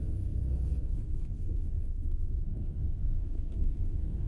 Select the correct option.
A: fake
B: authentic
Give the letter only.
A